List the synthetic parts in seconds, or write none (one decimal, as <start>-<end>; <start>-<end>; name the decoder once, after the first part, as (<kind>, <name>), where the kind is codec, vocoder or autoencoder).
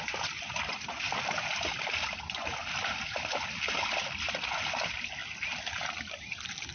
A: 2.6-3.3 (vocoder, BigVGAN v2)